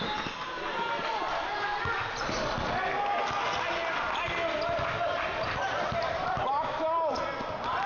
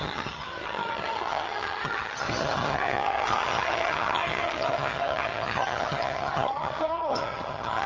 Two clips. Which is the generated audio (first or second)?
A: second